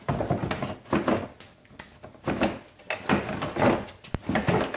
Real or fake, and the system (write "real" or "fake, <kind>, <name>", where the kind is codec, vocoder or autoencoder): real